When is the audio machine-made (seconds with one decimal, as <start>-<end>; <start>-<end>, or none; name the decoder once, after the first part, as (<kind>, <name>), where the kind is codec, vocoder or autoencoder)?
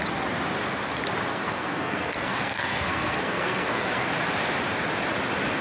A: 1.3-4.1 (codec, SNAC)